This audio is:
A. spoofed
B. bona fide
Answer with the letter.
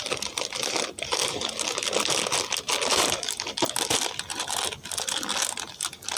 B